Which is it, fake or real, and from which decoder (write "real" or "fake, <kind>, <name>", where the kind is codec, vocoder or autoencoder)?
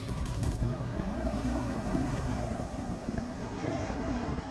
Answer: fake, codec, SNAC